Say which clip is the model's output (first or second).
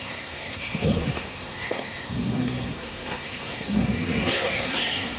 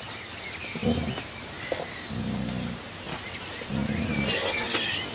first